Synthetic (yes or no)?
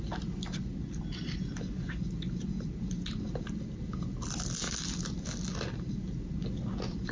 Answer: no